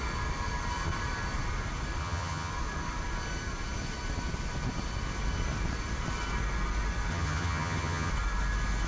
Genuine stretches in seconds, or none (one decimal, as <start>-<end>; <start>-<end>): 0.0-2.0; 2.5-7.1; 8.1-8.9